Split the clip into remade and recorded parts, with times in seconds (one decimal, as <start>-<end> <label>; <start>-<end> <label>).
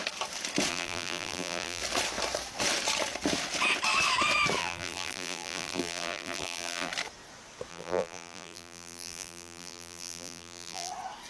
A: 0.0-0.7 recorded; 0.7-1.8 remade; 1.8-4.6 recorded; 4.6-6.9 remade; 6.9-7.7 recorded; 7.7-10.9 remade; 10.9-11.3 recorded